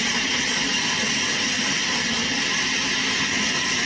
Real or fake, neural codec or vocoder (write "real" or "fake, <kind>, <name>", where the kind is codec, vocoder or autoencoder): real